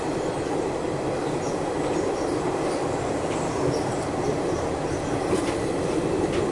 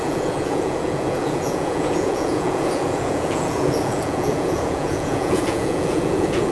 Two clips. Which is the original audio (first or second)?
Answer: first